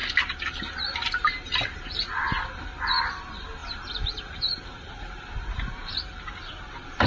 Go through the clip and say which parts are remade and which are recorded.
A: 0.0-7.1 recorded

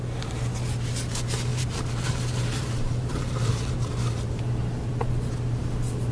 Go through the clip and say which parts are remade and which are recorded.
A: 0.0-1.5 recorded; 1.5-4.5 remade; 4.5-6.1 recorded

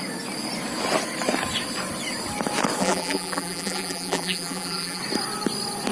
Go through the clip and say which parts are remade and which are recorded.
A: 0.0-2.8 recorded; 2.8-5.0 remade; 5.0-5.9 recorded

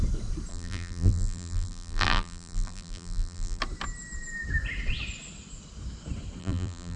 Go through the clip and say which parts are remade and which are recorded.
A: 0.0-0.5 recorded; 0.5-3.6 remade; 3.6-6.4 recorded; 6.4-7.0 remade

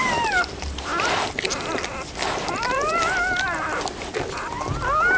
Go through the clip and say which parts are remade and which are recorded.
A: 0.0-0.5 remade; 0.5-0.9 recorded; 0.9-3.0 remade; 3.0-5.2 recorded